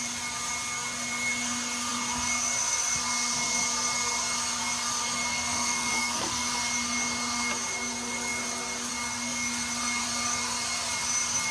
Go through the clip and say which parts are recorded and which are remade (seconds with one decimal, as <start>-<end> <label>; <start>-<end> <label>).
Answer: 0.0-5.3 recorded; 5.3-6.5 remade; 6.5-11.5 recorded